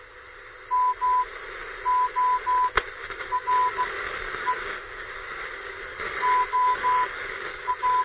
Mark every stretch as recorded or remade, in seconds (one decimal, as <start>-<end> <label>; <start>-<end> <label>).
0.0-3.0 recorded; 3.0-8.0 remade

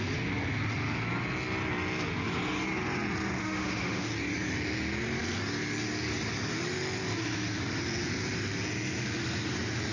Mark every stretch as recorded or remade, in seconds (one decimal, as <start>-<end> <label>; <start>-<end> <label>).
0.0-3.4 recorded; 3.4-4.1 remade; 4.1-9.9 recorded

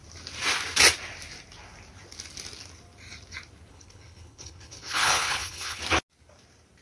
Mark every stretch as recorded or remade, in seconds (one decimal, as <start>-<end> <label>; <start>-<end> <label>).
0.0-3.7 recorded; 3.7-5.8 remade; 5.8-6.8 recorded

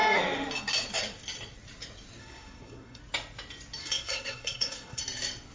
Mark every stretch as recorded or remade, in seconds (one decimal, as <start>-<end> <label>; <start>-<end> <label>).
0.0-2.2 recorded; 2.2-3.0 remade; 3.0-3.8 recorded; 3.8-5.0 remade; 5.0-5.5 recorded

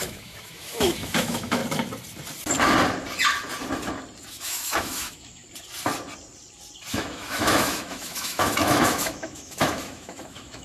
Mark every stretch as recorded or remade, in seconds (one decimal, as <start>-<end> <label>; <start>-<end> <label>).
0.0-1.6 remade; 1.6-4.3 recorded; 4.3-5.4 remade; 5.4-6.9 recorded; 6.9-10.6 remade

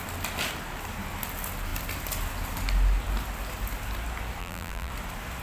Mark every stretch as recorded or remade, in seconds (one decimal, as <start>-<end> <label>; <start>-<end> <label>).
0.0-4.4 recorded; 4.4-4.9 remade; 4.9-5.4 recorded